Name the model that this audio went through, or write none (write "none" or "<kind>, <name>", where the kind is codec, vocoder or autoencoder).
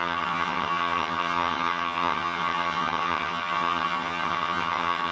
vocoder, HiFi-GAN